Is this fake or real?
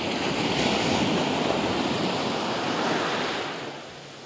real